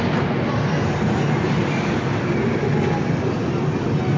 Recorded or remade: recorded